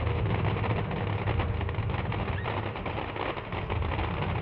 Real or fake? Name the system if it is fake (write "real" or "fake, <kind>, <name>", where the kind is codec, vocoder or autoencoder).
real